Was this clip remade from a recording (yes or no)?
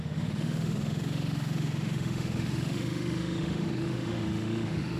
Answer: yes